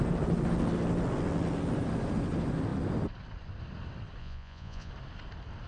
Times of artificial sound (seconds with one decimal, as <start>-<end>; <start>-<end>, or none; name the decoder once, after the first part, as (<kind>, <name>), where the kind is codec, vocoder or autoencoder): 4.2-4.9 (vocoder, Vocos)